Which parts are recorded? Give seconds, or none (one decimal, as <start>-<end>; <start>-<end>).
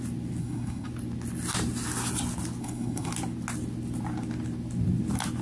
0.0-0.4; 0.9-2.6; 3.1-5.4